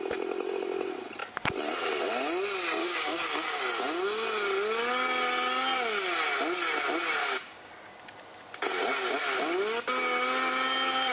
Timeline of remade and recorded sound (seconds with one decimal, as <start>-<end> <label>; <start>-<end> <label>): 0.0-2.8 recorded; 2.8-3.6 remade; 3.6-7.2 recorded; 7.2-7.7 remade; 7.7-11.1 recorded